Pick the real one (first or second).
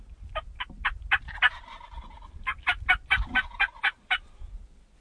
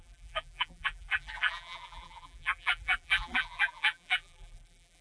first